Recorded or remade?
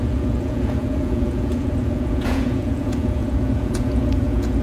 remade